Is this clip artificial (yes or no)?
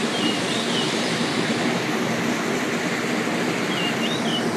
no